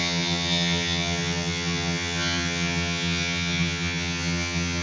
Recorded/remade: remade